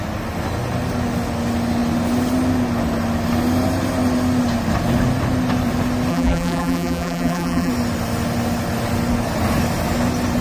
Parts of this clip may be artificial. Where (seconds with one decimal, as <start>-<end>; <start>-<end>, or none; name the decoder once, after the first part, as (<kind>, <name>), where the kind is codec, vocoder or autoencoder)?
6.1-7.7 (vocoder, BigVGAN v2)